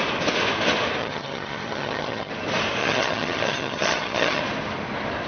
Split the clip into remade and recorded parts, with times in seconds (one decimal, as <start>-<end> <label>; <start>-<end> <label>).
0.0-1.0 recorded; 1.0-2.3 remade; 2.3-2.8 recorded; 2.8-4.4 remade; 4.4-5.3 recorded